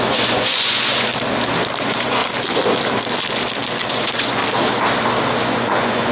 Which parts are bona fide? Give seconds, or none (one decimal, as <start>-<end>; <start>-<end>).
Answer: 1.1-1.8; 2.2-3.9; 4.4-5.4